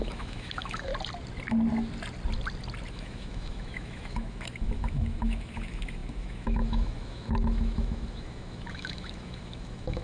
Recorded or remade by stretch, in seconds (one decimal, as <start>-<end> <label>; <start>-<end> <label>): 0.0-0.9 remade; 0.9-2.9 recorded; 2.9-10.0 remade